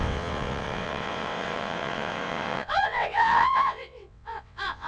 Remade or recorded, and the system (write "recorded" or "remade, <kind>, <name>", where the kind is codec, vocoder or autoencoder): remade, vocoder, WaveNeXt